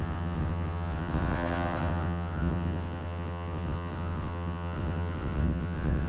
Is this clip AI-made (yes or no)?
yes